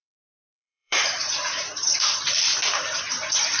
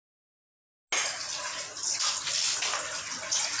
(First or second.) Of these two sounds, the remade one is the first